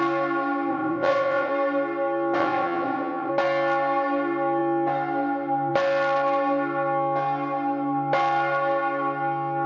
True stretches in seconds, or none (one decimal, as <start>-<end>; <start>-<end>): 0.0-0.7; 1.5-2.4; 3.3-9.7